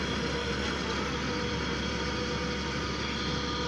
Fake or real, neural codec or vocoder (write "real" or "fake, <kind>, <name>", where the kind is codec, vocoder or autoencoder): real